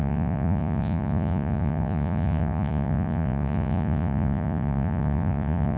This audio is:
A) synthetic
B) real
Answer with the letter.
A